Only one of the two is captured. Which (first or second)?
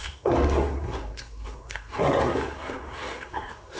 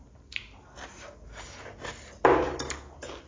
second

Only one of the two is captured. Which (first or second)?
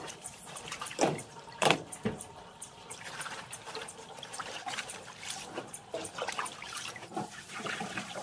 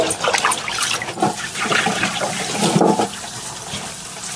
second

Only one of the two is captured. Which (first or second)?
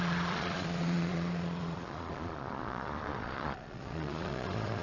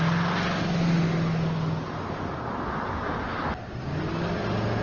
second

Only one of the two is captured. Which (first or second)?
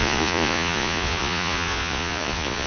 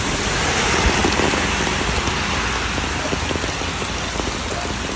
second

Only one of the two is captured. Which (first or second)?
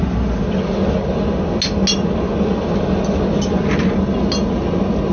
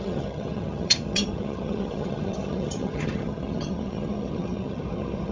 first